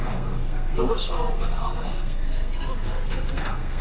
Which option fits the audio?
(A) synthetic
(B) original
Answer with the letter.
A